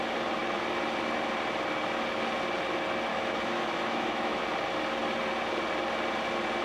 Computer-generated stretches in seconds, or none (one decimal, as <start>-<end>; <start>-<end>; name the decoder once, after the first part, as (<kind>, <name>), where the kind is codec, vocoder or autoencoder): 3.1-4.4 (autoencoder, DAC-VAE)